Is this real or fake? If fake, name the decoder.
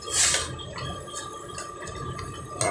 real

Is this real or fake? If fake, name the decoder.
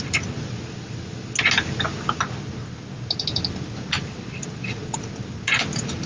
real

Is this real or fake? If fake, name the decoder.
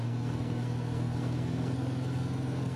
fake, codec, SNAC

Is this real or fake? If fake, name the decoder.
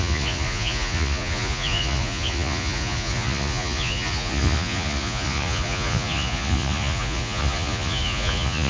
fake, vocoder, Vocos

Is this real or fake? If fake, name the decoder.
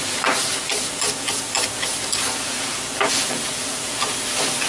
real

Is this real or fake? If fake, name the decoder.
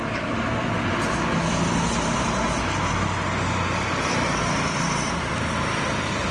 real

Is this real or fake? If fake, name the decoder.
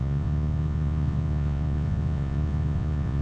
fake, vocoder, Vocos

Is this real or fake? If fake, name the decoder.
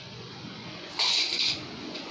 fake, vocoder, Vocos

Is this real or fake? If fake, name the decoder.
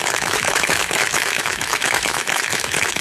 fake, autoencoder, DAC-VAE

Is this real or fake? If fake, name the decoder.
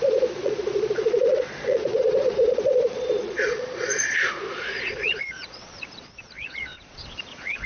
fake, vocoder, Vocos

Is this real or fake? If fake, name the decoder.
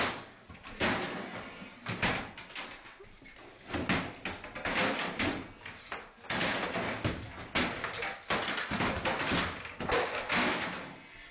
real